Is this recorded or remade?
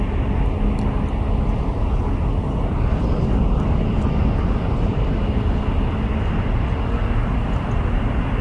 recorded